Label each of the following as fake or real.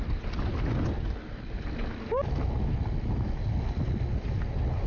real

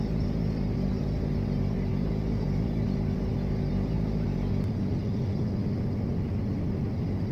real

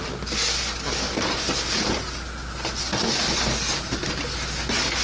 real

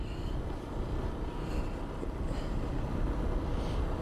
real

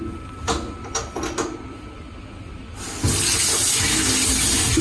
real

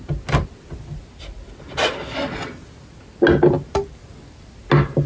real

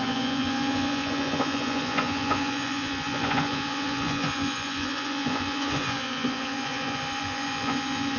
fake